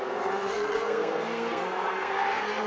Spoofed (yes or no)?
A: yes